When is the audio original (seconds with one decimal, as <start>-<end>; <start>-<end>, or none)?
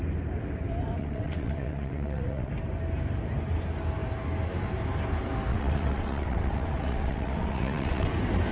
0.0-1.0; 2.5-5.5; 8.1-8.5